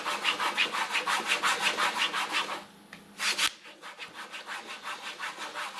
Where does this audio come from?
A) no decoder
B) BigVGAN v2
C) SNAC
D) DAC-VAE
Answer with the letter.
A